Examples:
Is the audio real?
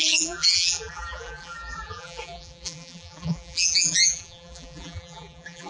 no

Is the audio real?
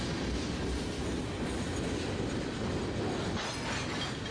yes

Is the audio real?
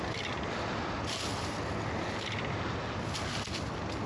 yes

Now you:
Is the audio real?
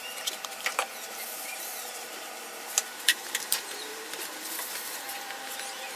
no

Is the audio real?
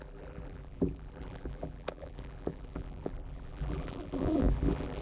no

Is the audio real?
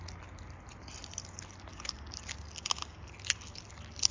yes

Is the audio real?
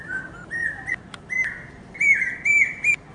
yes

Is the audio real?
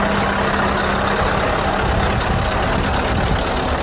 yes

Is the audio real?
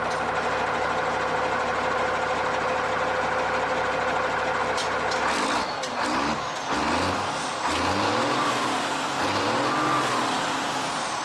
yes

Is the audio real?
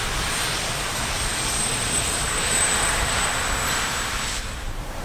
no